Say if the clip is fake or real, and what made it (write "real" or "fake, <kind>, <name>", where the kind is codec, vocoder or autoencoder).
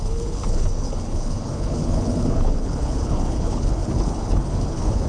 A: fake, codec, HILCodec